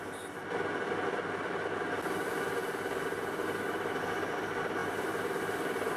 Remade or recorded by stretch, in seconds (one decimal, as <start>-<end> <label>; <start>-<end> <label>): 0.0-6.0 recorded